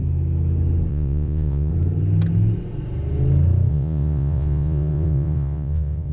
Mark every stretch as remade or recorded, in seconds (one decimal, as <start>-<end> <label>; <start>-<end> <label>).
0.0-0.9 recorded; 0.9-1.7 remade; 1.7-3.7 recorded; 3.7-6.1 remade